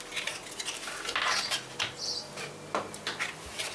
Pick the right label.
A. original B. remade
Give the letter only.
A